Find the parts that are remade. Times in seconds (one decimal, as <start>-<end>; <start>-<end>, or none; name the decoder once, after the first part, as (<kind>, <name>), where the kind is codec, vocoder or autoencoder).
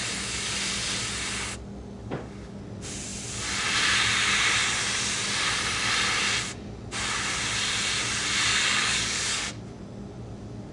2.0-2.6 (codec, DAC); 8.5-9.6